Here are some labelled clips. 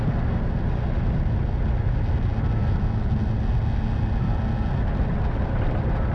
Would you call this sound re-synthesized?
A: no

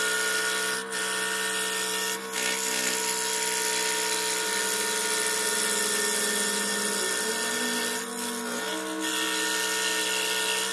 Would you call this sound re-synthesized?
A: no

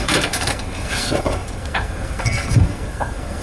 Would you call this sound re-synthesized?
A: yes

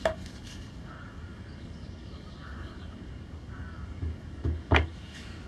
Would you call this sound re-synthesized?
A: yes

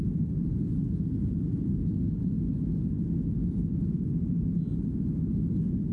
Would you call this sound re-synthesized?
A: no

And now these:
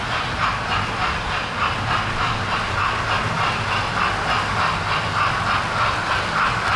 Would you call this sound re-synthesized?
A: no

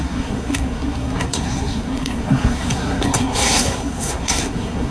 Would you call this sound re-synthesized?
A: yes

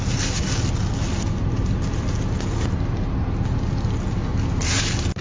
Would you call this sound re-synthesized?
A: no